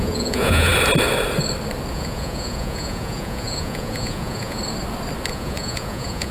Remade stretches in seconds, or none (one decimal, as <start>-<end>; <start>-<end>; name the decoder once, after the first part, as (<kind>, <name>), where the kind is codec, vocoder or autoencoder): 0.0-0.7 (vocoder, Vocos); 1.9-4.6; 5.3-6.3